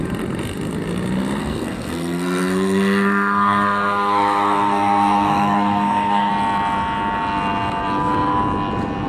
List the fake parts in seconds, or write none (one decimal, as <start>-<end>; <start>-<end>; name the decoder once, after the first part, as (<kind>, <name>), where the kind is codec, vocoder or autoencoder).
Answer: 1.4-6.3 (codec, SNAC)